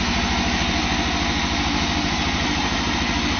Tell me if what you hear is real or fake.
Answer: real